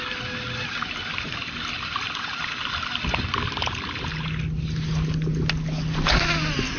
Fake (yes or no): no